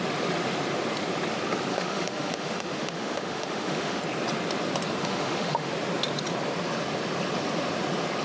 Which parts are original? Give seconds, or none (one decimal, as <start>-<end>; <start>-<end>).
0.0-1.7; 4.0-5.0; 5.7-8.2